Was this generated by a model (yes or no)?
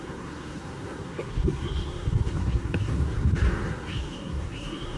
yes